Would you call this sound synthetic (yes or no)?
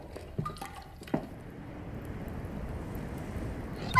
no